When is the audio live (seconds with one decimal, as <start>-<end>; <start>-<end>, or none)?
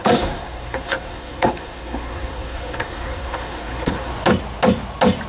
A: 4.1-5.3